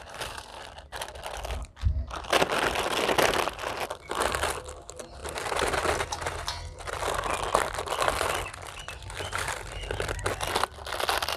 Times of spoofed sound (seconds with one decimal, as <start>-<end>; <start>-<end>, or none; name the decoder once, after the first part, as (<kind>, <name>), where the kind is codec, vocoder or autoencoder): none